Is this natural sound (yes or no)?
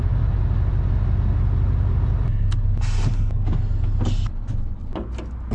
yes